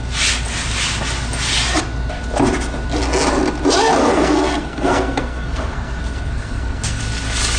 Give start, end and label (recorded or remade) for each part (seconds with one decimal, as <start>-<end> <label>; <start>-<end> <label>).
0.0-4.0 recorded; 4.0-7.0 remade; 7.0-7.6 recorded